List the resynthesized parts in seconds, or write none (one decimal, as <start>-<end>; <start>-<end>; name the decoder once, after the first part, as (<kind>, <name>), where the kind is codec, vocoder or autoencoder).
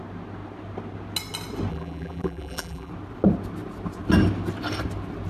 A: 1.7-2.9 (vocoder, BigVGAN v2)